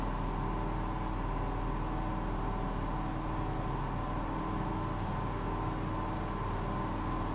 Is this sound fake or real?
real